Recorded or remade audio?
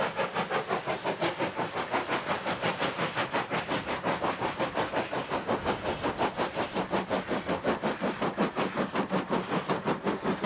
recorded